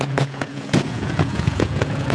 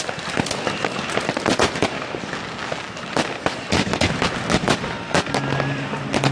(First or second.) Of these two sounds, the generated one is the first